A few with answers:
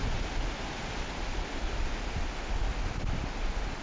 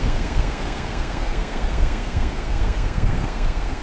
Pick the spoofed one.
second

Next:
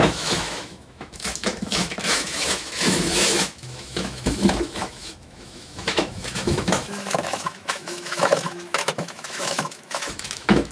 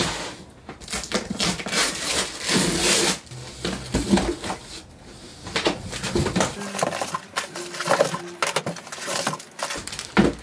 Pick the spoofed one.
first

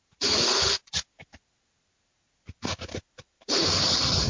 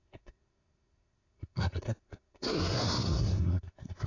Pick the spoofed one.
second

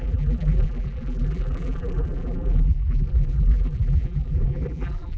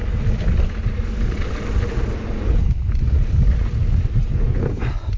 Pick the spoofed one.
first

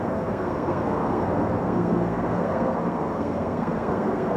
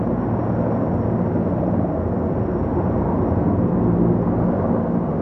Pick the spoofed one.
first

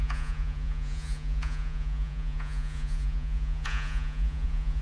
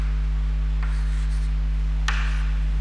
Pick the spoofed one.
first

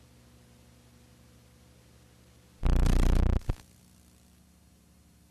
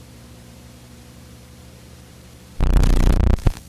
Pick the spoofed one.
second